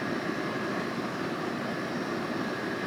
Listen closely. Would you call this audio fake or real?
fake